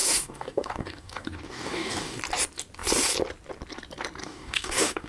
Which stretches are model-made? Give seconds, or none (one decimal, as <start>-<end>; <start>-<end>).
0.0-2.2; 4.2-5.1